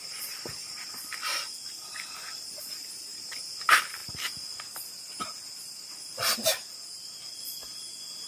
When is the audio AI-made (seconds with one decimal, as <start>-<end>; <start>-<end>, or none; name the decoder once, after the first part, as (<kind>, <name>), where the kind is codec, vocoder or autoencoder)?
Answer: none